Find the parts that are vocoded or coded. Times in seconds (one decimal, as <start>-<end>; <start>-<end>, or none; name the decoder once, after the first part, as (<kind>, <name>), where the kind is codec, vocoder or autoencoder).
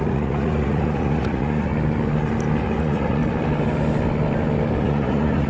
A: 0.0-1.7 (vocoder, Vocos); 2.8-3.2; 4.8-5.5